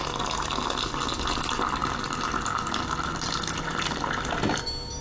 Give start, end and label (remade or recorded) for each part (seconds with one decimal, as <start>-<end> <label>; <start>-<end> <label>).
0.0-5.0 recorded